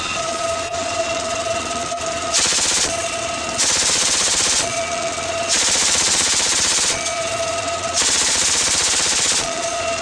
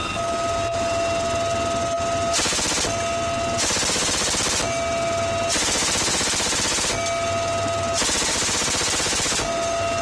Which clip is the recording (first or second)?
second